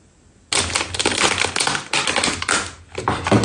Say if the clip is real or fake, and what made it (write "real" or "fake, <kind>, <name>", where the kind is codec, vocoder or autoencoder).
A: real